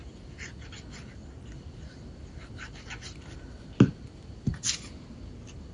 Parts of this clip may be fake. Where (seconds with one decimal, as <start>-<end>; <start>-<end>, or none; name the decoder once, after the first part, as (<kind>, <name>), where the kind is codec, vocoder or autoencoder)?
none